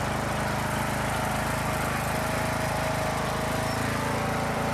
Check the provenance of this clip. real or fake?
fake